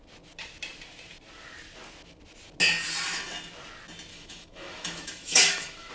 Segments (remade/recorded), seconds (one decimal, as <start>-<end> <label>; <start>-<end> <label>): 0.0-4.1 recorded; 4.1-5.9 remade